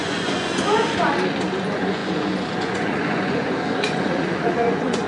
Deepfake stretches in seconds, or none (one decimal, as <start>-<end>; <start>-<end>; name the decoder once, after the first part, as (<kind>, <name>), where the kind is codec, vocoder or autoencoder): 0.0-0.5 (vocoder, Vocos); 1.6-5.1